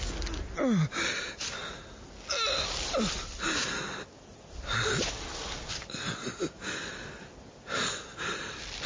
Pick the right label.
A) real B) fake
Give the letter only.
A